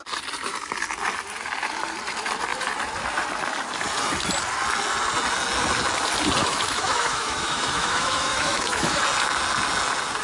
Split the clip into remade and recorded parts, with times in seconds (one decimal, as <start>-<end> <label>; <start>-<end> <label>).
0.0-6.4 recorded; 6.4-9.0 remade; 9.0-10.2 recorded